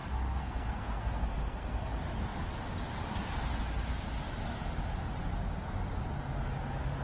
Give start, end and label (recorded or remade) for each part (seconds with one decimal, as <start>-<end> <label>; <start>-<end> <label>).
0.0-1.9 remade; 1.9-7.0 recorded

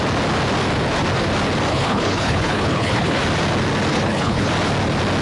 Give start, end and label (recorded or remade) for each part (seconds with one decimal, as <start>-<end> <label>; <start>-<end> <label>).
0.0-1.7 recorded; 1.7-3.2 remade; 3.2-3.9 recorded; 3.9-4.5 remade; 4.5-5.2 recorded

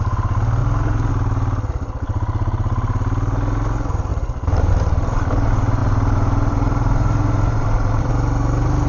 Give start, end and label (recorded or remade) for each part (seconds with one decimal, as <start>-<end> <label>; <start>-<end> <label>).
0.0-0.6 recorded; 0.6-1.1 remade; 1.1-4.1 recorded; 4.1-4.7 remade; 4.7-5.8 recorded; 5.8-8.1 remade; 8.1-8.9 recorded

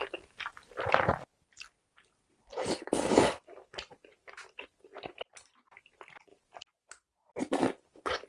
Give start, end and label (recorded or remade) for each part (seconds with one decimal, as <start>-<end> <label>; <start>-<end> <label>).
0.0-8.3 recorded